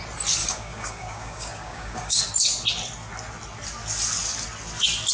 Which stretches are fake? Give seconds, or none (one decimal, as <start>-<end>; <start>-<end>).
0.4-2.2